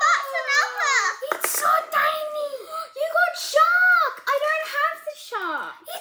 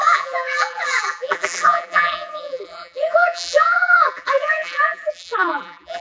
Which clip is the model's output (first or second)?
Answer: second